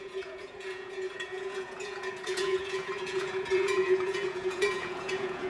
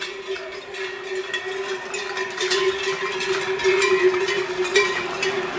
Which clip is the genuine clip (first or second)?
second